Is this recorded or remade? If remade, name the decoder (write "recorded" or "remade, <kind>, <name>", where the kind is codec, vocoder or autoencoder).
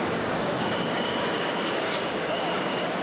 remade, codec, DAC